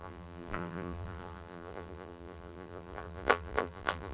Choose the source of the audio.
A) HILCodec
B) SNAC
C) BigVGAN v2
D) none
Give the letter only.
C